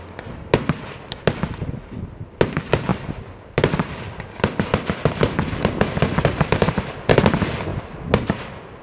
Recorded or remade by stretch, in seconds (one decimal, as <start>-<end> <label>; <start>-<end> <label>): 0.0-2.9 recorded; 2.9-7.1 remade; 7.1-8.8 recorded